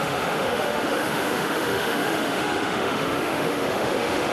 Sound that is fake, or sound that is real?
fake